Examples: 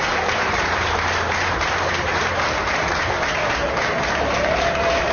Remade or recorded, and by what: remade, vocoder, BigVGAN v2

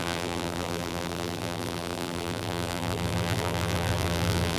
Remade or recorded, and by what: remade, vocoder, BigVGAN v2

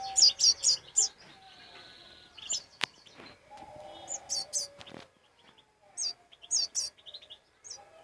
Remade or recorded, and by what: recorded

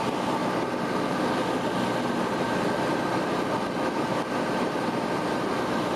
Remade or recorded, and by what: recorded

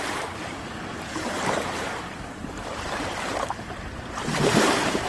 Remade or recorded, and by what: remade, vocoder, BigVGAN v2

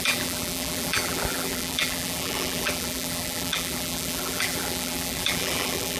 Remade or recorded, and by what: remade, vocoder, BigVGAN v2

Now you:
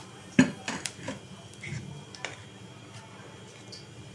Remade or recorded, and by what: recorded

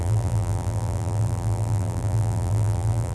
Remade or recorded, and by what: remade, vocoder, BigVGAN v2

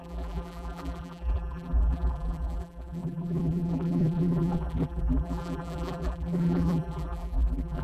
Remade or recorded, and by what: remade, vocoder, BigVGAN v2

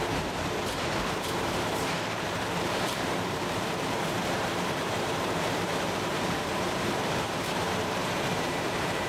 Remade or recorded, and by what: remade, vocoder, BigVGAN v2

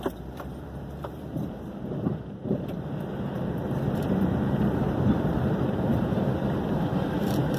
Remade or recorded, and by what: remade, vocoder, BigVGAN v2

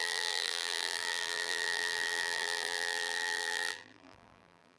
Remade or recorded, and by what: remade, vocoder, BigVGAN v2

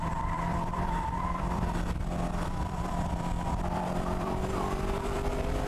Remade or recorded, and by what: remade, vocoder, BigVGAN v2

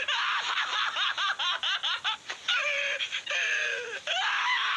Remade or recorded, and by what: remade, vocoder, BigVGAN v2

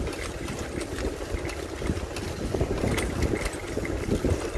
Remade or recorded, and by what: remade, vocoder, BigVGAN v2